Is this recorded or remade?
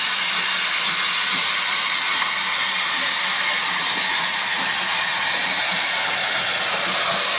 recorded